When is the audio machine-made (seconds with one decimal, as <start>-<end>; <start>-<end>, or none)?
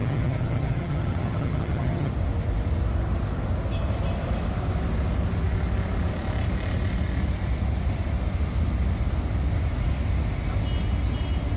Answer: 0.0-2.1